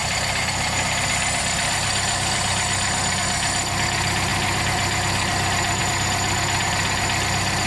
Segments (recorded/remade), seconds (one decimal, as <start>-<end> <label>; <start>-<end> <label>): 0.0-7.7 recorded